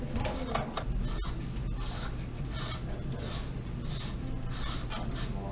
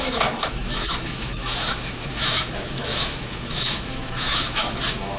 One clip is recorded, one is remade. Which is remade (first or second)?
second